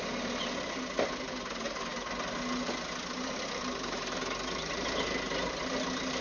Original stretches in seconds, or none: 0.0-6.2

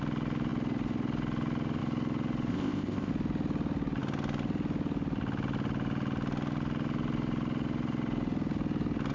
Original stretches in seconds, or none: 0.0-2.5; 3.1-9.1

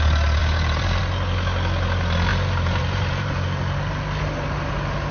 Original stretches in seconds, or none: 0.0-0.4; 1.0-2.3; 3.3-5.1

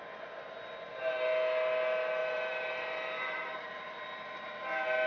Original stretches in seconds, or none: 0.0-2.2; 3.6-5.1